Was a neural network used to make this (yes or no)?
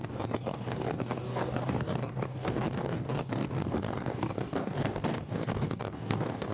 yes